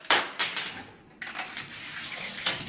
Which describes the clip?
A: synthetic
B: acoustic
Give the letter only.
B